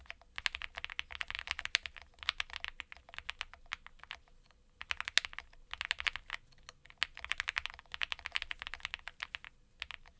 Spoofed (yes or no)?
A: no